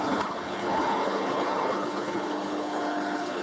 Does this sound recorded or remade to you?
remade